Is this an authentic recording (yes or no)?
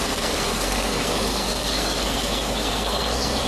no